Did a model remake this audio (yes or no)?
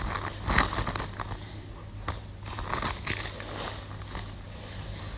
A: no